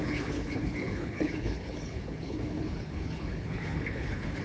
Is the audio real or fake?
fake